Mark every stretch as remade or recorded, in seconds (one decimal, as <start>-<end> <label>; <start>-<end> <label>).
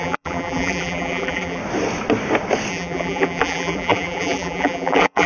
0.0-1.6 remade; 1.6-2.7 recorded; 2.7-5.3 remade